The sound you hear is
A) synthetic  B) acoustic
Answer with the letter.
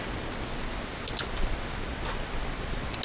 B